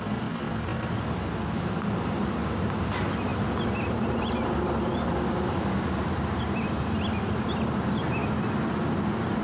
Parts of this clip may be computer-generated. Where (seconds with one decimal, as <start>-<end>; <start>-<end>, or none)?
none